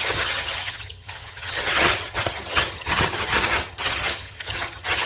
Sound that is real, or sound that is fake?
fake